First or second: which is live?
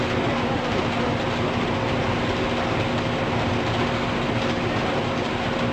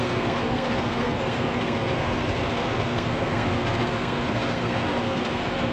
first